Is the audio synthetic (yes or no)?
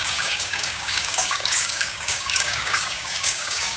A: yes